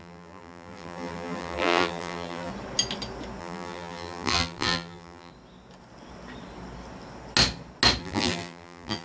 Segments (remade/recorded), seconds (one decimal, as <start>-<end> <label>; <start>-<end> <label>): 0.0-2.5 remade; 2.5-3.4 recorded; 3.4-5.3 remade; 5.3-8.0 recorded; 8.0-9.0 remade

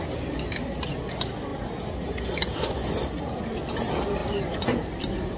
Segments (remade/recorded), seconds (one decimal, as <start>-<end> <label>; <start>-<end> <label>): 0.0-4.2 recorded; 4.2-5.4 remade